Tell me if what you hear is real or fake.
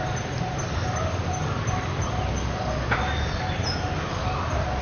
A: real